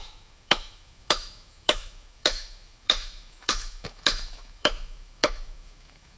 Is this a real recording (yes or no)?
no